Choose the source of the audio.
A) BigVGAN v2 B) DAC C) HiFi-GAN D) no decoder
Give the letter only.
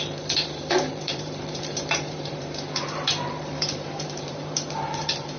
A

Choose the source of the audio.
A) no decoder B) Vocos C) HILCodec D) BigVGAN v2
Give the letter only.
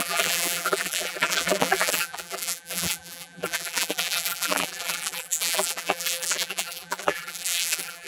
D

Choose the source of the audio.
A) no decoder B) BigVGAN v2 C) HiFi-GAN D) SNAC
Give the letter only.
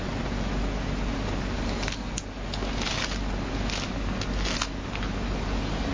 A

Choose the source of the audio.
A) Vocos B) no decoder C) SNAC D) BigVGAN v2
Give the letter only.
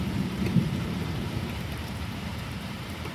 D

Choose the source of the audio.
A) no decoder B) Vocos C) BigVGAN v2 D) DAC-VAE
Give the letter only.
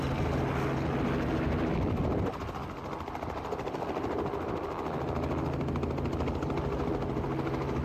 A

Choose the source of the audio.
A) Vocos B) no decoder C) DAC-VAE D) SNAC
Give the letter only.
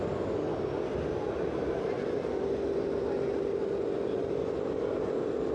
B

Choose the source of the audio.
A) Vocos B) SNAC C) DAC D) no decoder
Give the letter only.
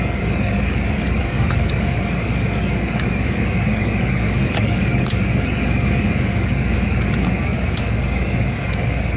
C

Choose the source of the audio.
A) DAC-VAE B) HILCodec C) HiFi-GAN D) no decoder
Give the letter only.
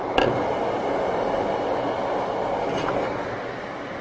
D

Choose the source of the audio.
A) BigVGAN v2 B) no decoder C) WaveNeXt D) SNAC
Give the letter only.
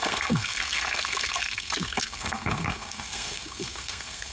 D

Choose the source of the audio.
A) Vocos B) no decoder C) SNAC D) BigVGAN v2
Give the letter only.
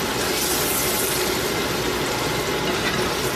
B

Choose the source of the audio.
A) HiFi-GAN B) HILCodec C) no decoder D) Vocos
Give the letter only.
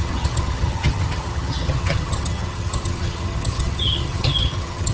A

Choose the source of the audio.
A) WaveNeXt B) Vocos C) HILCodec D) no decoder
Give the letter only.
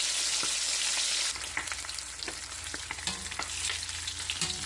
D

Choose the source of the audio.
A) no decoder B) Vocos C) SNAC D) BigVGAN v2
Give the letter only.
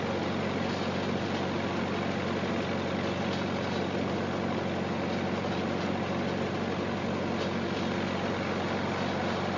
A